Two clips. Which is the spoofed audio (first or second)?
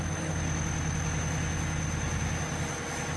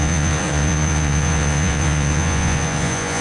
second